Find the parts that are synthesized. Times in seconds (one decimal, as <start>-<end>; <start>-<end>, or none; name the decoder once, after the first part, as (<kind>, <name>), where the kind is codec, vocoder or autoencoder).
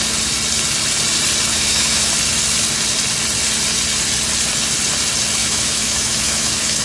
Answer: 1.5-2.1 (autoencoder, DAC-VAE); 5.4-6.8